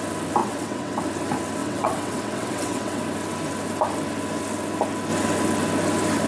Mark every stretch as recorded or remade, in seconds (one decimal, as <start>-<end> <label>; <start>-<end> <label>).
0.0-0.4 recorded; 0.4-1.0 remade; 1.0-1.6 recorded; 1.6-3.0 remade; 3.0-6.3 recorded